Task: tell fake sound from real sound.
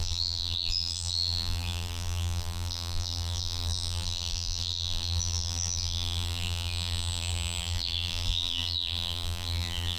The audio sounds fake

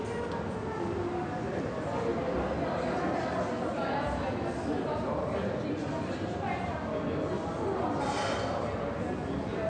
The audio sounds real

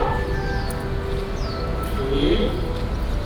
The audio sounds real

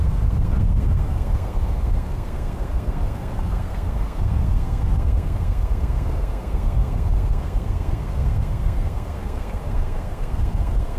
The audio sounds fake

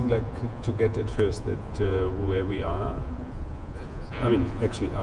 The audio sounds fake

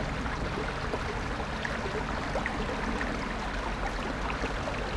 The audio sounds real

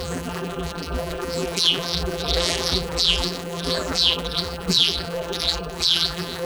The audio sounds fake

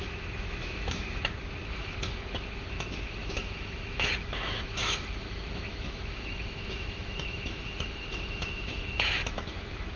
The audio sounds fake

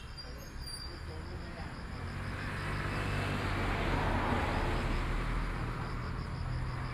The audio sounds real